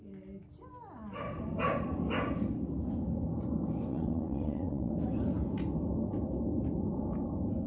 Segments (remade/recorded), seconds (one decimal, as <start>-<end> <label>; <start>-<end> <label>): 0.0-3.9 recorded; 3.9-4.9 remade; 4.9-7.7 recorded